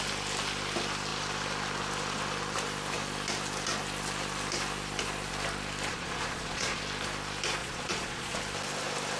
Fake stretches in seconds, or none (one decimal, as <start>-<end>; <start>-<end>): 5.9-6.8; 7.6-8.4